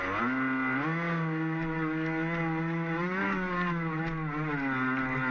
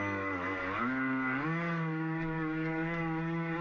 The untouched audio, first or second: first